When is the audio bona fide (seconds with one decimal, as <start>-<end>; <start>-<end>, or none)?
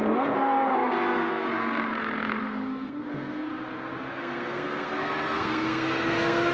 3.5-4.1